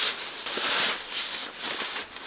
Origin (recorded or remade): recorded